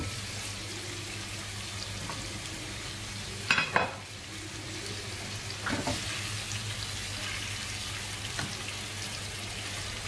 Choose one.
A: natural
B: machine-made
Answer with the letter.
A